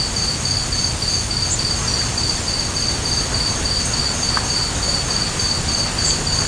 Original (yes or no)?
yes